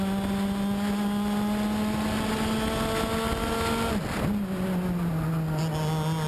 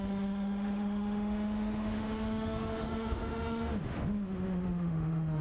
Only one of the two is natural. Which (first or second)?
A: first